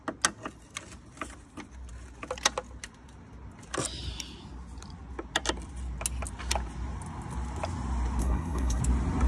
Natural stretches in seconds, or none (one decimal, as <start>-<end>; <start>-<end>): 0.0-8.2; 8.8-9.3